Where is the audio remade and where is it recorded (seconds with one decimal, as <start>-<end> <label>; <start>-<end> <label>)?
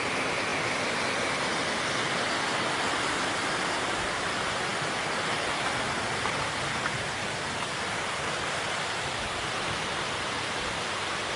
0.0-11.4 recorded